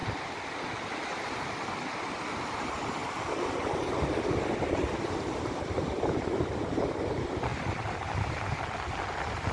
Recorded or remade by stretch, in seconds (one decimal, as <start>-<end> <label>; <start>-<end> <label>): 0.0-9.5 recorded